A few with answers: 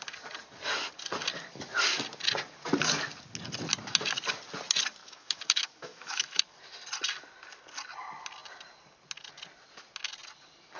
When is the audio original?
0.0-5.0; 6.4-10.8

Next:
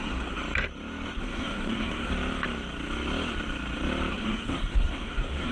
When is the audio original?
0.4-1.2; 2.1-4.1

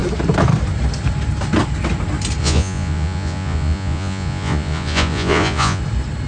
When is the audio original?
0.0-2.4; 5.8-6.3

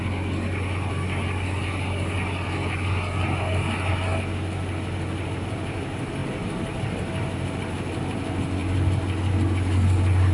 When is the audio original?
0.0-10.3